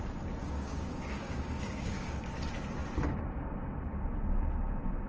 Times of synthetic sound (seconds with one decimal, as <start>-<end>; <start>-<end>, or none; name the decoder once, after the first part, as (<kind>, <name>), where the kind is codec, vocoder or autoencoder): 0.4-2.3 (codec, DAC)